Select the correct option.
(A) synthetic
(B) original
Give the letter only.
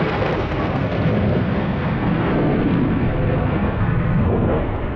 A